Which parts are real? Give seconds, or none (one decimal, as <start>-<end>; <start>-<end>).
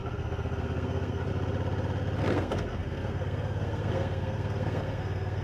1.3-2.2